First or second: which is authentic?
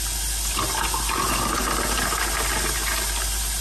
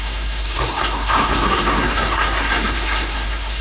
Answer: first